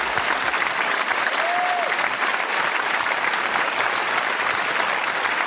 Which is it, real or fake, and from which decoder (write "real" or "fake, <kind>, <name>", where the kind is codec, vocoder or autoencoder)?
real